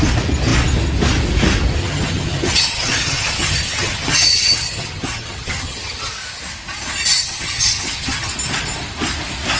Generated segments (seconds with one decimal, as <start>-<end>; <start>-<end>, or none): 1.8-6.1; 7.2-8.3